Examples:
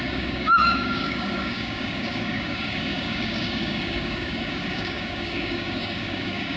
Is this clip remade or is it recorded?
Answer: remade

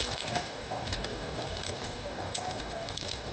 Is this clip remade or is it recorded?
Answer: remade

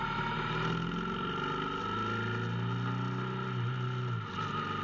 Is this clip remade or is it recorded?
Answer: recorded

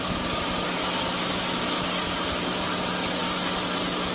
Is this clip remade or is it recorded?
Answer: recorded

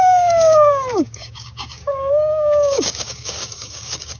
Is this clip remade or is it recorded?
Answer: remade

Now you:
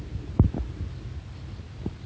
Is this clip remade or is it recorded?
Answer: recorded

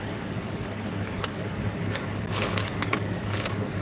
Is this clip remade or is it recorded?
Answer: remade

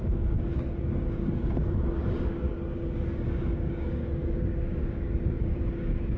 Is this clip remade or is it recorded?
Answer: remade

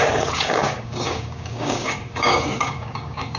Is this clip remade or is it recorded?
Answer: remade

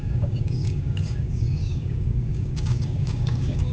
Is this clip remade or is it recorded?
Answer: remade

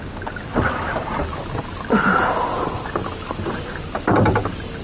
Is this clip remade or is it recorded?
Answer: recorded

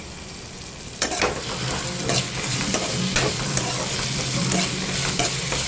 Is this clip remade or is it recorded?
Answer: recorded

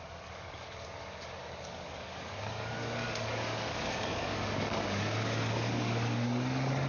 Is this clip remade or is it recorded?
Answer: remade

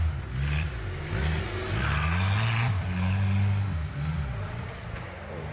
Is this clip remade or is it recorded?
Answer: recorded